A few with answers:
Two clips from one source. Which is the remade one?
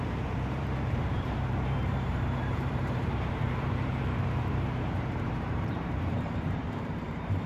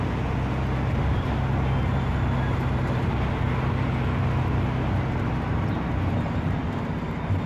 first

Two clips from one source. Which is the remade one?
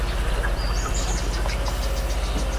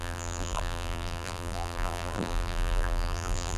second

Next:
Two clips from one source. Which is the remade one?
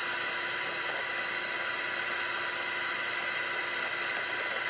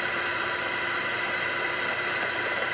second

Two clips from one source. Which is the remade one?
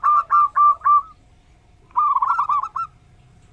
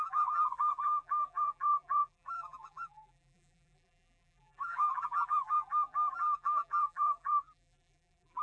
second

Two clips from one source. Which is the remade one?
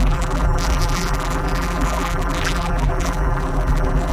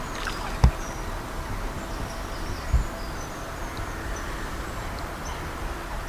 first